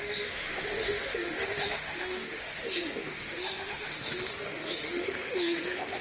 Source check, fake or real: fake